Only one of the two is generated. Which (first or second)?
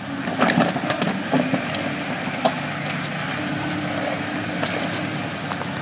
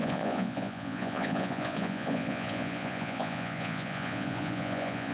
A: second